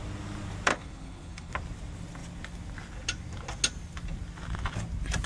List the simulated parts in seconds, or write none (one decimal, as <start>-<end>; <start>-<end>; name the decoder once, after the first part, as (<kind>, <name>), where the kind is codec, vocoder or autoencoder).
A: 0.7-1.5 (codec, HILCodec)